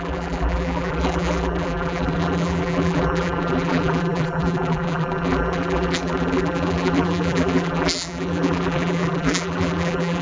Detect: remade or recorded remade